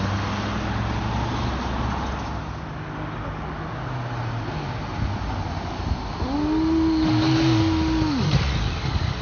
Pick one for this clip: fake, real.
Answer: real